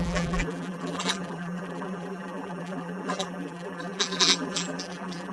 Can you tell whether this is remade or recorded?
remade